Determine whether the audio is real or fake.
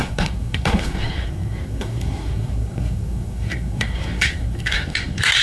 fake